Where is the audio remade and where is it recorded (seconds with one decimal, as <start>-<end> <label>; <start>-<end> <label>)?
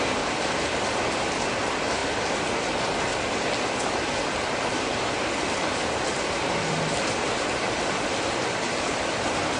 0.0-2.0 remade; 2.0-2.7 recorded; 2.7-3.1 remade; 3.1-5.0 recorded; 5.0-9.6 remade